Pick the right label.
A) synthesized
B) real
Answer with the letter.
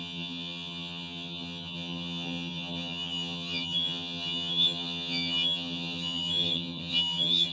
A